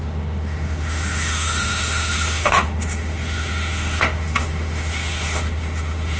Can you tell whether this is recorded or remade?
remade